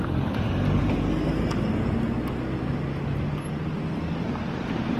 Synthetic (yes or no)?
no